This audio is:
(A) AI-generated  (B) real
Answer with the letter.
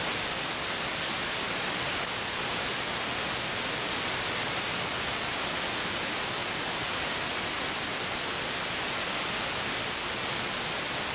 B